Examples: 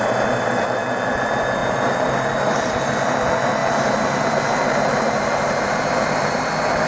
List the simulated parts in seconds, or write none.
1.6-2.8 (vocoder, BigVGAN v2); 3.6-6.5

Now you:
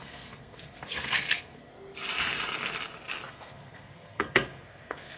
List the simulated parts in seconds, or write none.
0.0-1.7 (codec, SNAC); 3.3-5.2